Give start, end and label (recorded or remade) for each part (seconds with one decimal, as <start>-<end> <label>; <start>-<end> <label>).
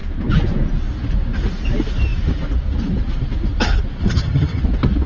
0.0-4.0 recorded; 4.0-4.6 remade; 4.6-5.1 recorded